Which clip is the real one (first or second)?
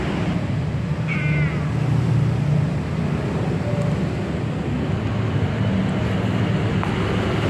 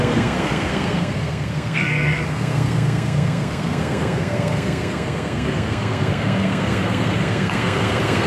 first